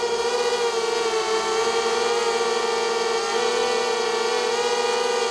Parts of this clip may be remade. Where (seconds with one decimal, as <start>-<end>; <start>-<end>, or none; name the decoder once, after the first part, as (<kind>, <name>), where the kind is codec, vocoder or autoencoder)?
none